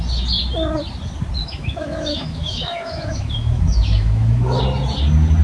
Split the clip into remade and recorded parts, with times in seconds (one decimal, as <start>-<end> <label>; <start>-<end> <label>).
0.0-1.4 recorded; 1.4-4.6 remade; 4.6-5.4 recorded